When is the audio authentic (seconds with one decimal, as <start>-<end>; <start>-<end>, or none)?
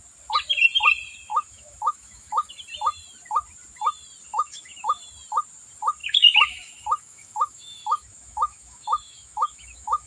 0.0-1.3; 2.5-4.3; 5.0-6.0